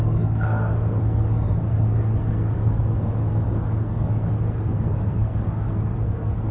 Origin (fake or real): fake